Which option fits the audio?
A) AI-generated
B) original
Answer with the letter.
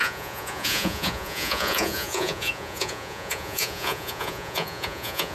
A